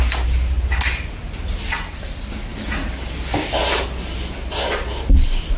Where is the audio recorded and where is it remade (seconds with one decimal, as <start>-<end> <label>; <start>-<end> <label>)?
0.0-5.6 recorded